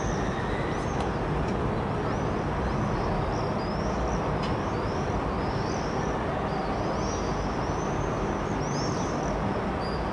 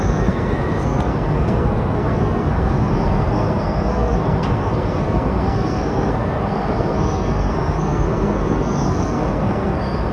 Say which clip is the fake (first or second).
second